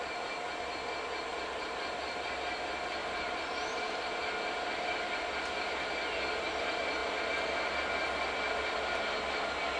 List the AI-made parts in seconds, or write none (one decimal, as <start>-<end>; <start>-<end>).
1.3-1.8; 3.0-4.1

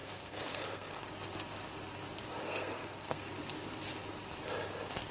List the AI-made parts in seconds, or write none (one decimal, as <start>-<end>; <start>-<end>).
0.0-1.1; 2.4-3.3